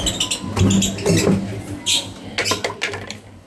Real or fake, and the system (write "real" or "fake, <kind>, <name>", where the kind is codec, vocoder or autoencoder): real